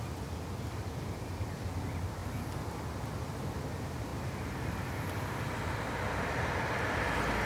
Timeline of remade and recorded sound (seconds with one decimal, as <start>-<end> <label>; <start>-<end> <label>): 0.0-7.5 recorded